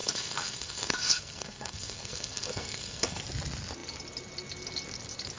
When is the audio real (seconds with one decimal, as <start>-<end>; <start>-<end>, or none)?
3.2-5.4